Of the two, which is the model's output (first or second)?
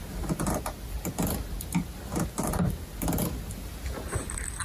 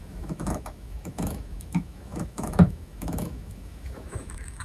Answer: second